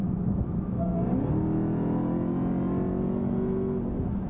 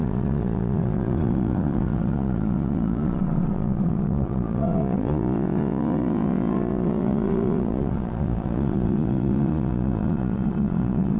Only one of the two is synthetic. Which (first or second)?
second